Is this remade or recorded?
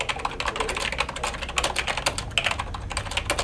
recorded